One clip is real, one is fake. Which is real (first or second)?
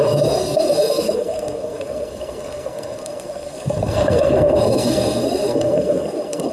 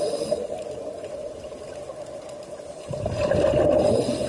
second